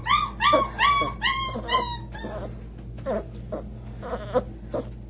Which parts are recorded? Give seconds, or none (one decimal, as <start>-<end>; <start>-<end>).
0.0-5.1